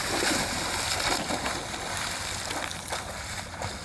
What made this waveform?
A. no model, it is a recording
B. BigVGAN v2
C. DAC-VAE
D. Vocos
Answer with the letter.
A